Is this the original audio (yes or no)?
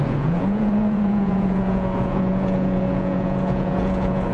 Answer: no